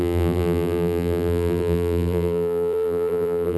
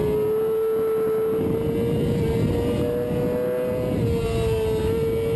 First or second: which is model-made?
first